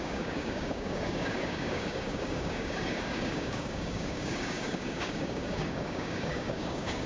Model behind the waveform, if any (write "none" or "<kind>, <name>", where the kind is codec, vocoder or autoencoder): codec, DAC